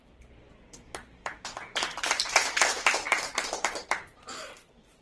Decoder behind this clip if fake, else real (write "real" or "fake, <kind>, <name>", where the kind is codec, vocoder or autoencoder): fake, vocoder, BigVGAN v2